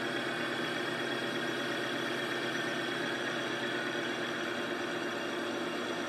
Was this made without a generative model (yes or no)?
yes